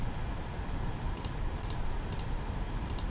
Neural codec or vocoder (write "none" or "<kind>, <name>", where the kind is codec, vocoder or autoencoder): none